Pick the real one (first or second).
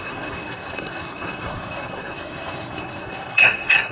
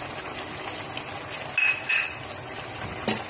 second